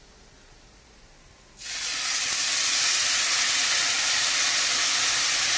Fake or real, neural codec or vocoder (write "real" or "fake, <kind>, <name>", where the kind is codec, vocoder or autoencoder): real